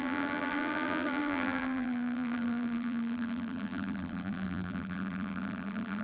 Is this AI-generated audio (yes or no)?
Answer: yes